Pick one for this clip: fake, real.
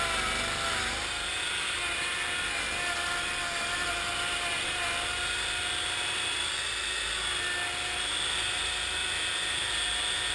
real